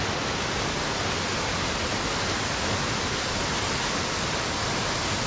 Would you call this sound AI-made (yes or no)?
no